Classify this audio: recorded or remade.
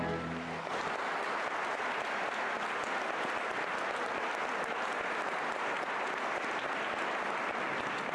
recorded